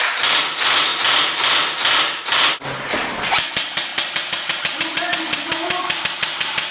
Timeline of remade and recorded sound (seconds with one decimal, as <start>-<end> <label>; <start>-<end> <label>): 0.0-6.7 recorded